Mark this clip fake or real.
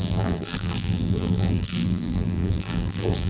fake